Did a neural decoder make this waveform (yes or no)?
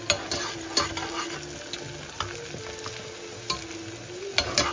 no